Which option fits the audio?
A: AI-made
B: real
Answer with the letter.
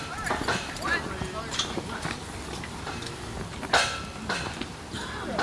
A